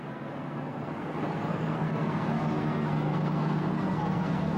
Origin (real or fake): fake